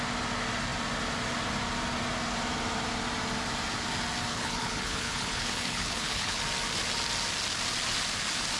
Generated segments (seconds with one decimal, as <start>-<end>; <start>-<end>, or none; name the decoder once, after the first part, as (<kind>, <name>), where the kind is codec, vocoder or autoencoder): 4.3-6.4 (codec, HILCodec)